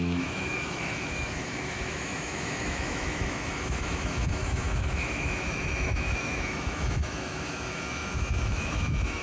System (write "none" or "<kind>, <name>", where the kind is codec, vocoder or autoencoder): autoencoder, DAC-VAE